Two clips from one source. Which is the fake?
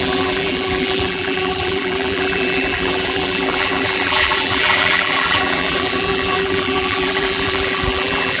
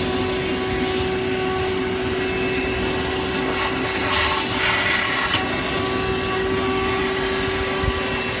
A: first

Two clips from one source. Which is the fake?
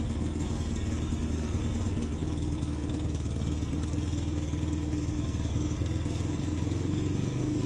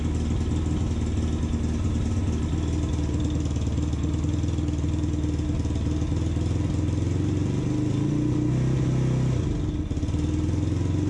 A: first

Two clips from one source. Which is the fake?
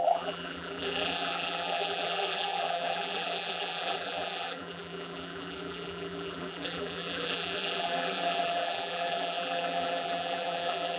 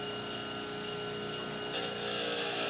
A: first